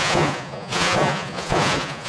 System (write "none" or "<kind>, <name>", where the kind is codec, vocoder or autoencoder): vocoder, Vocos